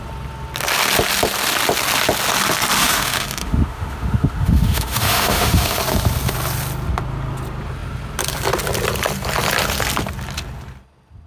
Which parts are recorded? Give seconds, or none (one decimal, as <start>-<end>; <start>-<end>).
0.0-2.8; 5.8-11.3